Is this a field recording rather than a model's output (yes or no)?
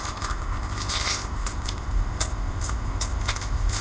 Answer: no